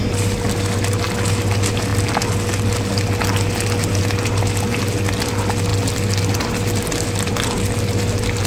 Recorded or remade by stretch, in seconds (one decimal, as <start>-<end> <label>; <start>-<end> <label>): 0.0-8.5 recorded